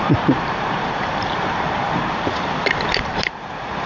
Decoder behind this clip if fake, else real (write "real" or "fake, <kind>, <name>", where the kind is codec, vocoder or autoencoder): fake, vocoder, BigVGAN v2